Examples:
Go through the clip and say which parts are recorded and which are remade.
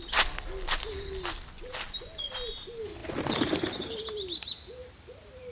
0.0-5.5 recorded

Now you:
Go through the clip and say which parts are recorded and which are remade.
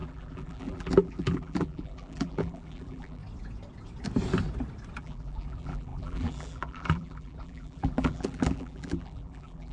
0.0-3.2 remade; 3.2-5.0 recorded; 5.0-9.7 remade